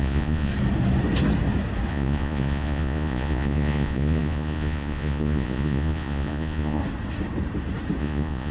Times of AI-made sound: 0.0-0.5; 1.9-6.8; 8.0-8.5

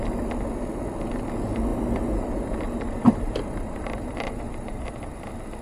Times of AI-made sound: 1.7-5.1

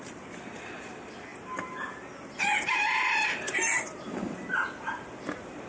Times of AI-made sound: none

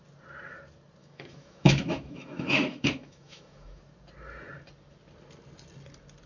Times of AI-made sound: 1.0-3.8